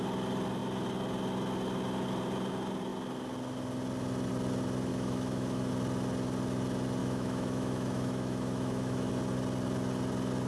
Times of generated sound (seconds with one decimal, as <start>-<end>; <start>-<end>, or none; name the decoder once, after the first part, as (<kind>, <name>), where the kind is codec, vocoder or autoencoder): 4.9-5.7 (autoencoder, DAC-VAE); 7.0-9.1